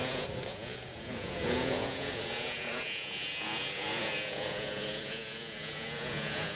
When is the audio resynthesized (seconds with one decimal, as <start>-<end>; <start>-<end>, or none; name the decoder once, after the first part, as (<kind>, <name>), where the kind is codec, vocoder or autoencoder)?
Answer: 0.0-6.6 (vocoder, Vocos)